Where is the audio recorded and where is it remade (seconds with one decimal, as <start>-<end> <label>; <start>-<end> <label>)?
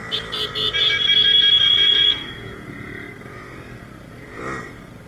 0.0-1.6 recorded; 1.6-2.9 remade; 2.9-5.1 recorded